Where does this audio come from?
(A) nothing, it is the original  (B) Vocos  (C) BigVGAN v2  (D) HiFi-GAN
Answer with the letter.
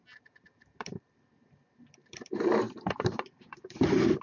C